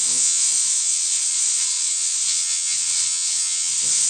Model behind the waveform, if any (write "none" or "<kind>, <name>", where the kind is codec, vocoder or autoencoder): vocoder, WaveNeXt